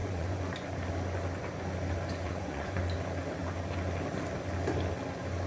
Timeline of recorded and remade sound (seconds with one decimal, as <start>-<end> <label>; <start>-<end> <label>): 0.0-0.7 remade; 0.7-2.2 recorded; 2.2-2.8 remade; 2.8-5.5 recorded